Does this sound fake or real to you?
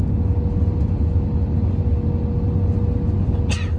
real